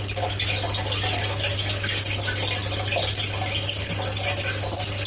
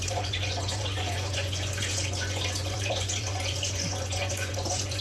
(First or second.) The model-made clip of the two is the second